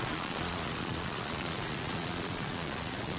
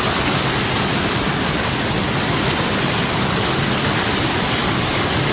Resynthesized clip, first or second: first